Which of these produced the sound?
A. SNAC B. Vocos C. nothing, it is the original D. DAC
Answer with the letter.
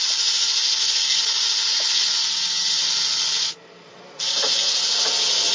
C